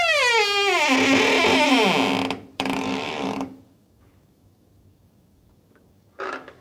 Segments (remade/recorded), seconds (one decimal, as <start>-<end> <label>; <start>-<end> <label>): 0.0-2.5 recorded; 2.5-6.6 remade